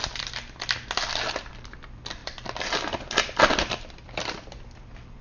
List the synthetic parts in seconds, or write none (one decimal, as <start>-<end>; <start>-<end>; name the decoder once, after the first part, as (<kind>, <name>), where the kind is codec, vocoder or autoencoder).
1.3-2.2 (vocoder, BigVGAN v2); 3.7-5.2